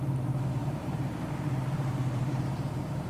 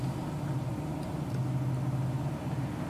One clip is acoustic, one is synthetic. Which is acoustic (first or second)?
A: second